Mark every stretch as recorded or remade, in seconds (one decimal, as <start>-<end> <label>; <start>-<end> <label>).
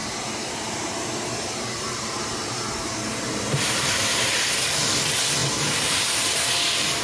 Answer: 0.0-4.2 remade; 4.2-5.4 recorded; 5.4-6.5 remade; 6.5-7.0 recorded